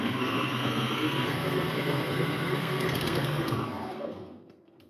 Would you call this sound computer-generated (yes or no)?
yes